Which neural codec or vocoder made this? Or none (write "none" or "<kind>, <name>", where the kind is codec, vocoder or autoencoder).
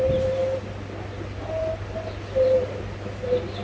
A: none